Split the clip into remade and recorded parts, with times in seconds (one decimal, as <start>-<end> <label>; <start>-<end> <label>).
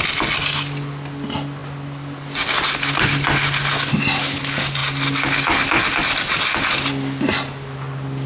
0.0-8.3 recorded